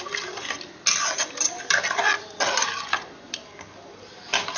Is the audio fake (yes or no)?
no